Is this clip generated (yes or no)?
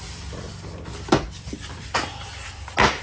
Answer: no